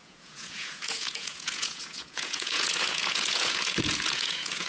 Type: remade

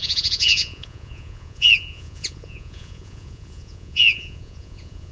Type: remade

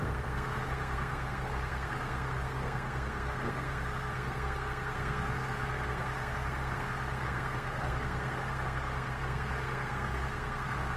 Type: remade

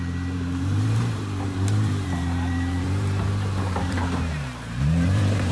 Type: remade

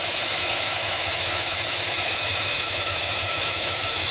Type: remade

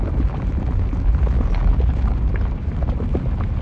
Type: recorded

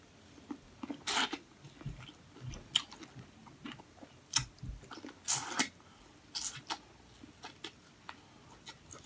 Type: recorded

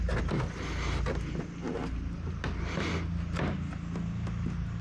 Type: recorded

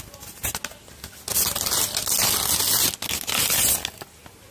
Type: recorded